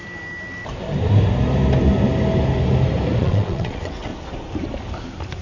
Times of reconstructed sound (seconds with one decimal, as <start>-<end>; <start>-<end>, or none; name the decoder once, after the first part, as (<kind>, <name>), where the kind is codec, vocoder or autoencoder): 3.2-4.1 (vocoder, WaveNeXt)